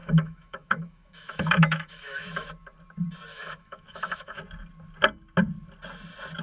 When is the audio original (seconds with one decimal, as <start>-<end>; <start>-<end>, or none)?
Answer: 2.5-3.3; 4.4-6.4